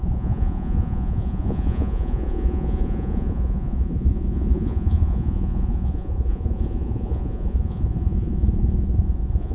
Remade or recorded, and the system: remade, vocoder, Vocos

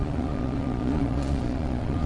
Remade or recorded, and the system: remade, vocoder, Vocos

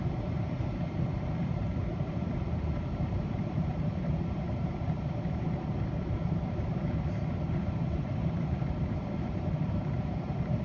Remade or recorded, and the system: remade, vocoder, BigVGAN v2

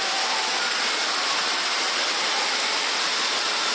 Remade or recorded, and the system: recorded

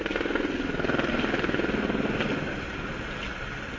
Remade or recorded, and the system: recorded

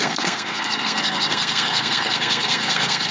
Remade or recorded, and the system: remade, codec, SNAC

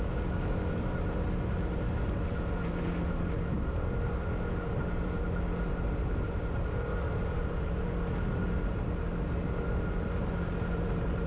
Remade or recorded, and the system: recorded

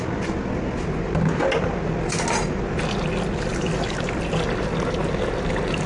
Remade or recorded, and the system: recorded